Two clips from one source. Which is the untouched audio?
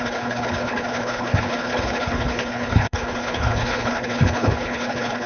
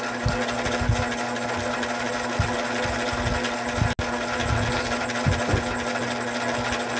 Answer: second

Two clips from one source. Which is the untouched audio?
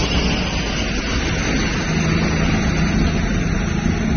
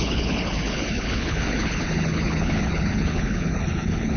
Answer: first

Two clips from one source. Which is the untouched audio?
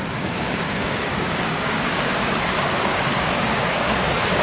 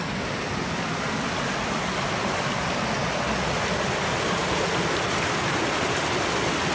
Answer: second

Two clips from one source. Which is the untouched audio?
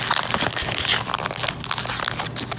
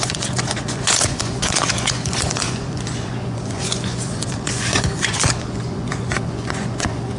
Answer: first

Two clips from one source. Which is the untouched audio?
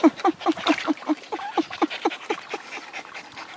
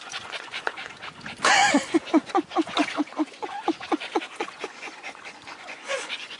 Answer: first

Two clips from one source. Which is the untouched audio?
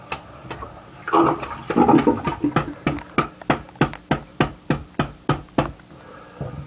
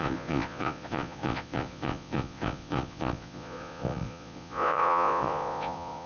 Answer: first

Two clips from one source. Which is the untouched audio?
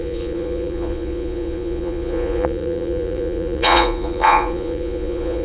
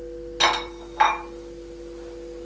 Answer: second